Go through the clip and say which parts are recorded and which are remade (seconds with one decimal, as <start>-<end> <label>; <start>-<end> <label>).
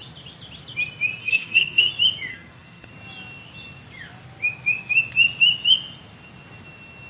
0.0-1.2 recorded; 1.2-1.9 remade; 1.9-2.3 recorded; 2.3-2.9 remade; 2.9-7.1 recorded